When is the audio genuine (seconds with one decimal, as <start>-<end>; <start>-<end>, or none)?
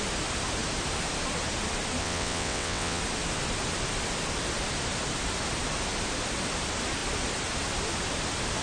0.0-2.0; 3.0-8.6